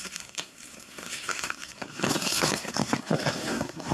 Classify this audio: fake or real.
fake